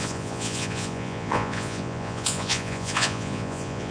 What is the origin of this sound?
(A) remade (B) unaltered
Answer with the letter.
A